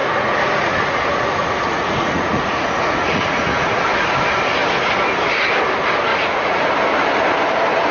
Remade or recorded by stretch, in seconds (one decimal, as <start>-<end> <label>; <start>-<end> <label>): 0.0-3.8 remade; 3.8-6.1 recorded; 6.1-6.7 remade; 6.7-7.9 recorded